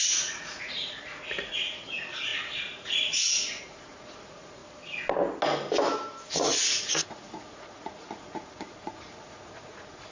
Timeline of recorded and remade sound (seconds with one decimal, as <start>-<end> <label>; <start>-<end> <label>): 0.0-4.6 remade; 4.6-6.3 recorded; 6.3-10.1 remade